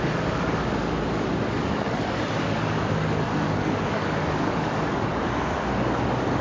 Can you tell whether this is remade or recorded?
remade